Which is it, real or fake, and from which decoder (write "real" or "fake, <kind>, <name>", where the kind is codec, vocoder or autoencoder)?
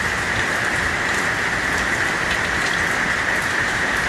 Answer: real